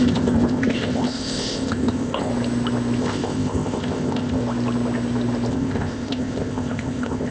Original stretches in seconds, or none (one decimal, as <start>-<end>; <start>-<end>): 2.3-3.0; 4.4-5.5